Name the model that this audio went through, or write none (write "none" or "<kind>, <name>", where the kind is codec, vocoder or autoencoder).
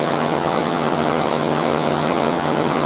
vocoder, HiFi-GAN